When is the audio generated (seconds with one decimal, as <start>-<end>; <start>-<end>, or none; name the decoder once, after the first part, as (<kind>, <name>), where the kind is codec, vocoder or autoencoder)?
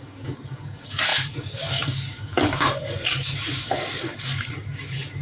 0.0-5.2 (codec, DAC)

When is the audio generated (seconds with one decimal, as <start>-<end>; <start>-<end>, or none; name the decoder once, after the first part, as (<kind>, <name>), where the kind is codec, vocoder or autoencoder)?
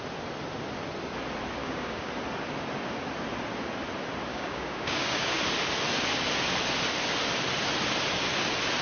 1.6-2.1 (codec, DAC); 4.3-5.4